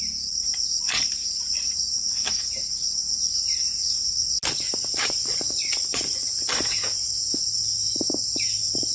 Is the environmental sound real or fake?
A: fake